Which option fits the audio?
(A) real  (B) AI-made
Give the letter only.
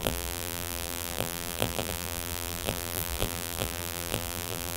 B